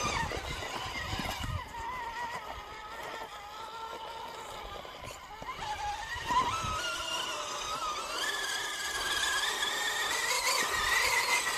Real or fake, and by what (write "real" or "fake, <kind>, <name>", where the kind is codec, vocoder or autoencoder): real